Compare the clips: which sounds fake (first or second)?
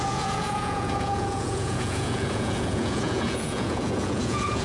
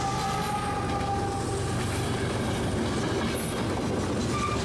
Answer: first